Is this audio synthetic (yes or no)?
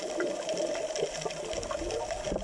no